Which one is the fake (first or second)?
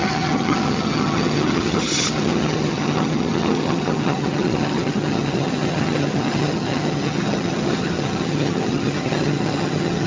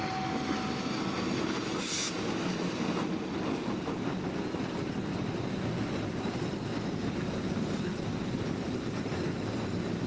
first